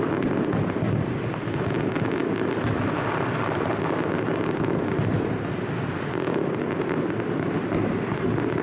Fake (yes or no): no